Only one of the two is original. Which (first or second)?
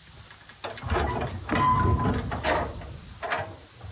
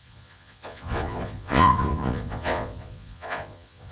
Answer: first